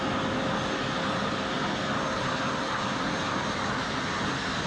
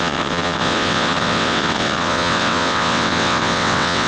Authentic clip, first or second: first